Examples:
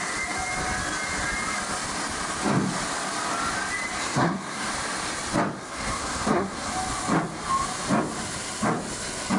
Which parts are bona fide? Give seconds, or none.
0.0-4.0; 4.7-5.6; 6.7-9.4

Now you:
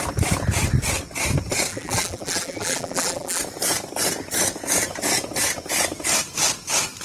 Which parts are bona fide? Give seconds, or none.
0.0-1.7; 3.4-7.0

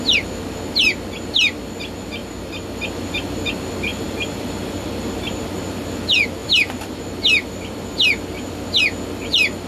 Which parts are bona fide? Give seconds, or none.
0.0-3.9; 5.1-6.4; 7.0-9.7

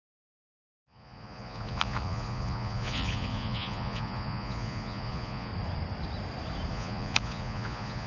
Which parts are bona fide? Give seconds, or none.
5.5-6.7

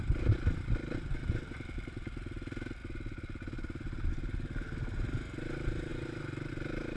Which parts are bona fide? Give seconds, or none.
0.0-7.0

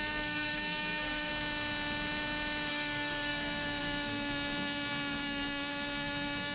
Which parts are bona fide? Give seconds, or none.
1.3-2.7

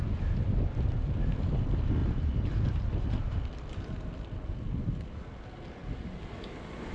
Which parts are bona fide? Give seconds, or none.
0.0-2.0; 3.4-6.9